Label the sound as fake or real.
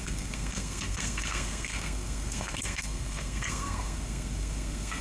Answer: fake